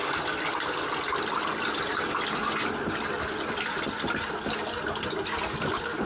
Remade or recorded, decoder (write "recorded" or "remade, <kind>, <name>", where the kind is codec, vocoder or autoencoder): recorded